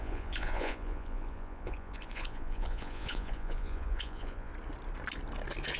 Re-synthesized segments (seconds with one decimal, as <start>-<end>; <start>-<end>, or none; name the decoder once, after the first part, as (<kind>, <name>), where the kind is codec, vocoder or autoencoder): 0.0-4.5 (vocoder, Vocos)

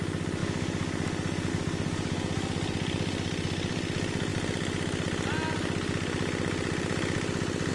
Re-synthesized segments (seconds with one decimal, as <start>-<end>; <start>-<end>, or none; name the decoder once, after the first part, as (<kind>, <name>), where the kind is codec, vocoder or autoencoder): none

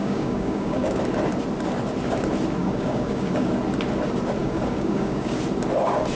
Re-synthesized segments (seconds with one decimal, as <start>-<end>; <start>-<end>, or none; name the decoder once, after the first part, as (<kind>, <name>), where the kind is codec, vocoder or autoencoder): 0.0-1.0 (codec, DAC); 2.6-3.5; 4.4-5.4

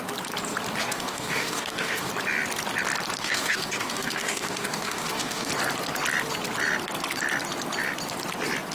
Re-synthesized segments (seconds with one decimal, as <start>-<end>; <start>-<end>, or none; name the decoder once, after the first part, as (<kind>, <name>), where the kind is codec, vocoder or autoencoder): 0.8-2.1 (codec, DAC); 3.2-5.5

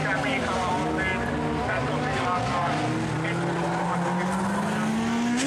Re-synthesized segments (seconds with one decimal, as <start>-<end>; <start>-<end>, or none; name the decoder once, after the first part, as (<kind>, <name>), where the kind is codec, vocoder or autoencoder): none